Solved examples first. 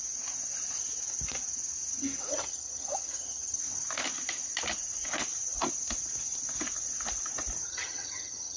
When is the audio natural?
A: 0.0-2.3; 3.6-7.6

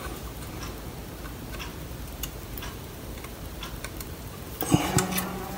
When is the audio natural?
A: 0.0-1.7; 4.4-5.6

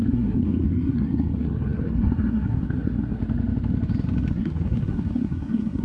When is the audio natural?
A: 3.2-4.3

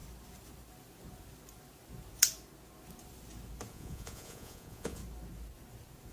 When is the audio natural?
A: 0.0-3.7; 5.0-6.1